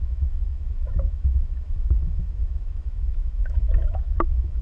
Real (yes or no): no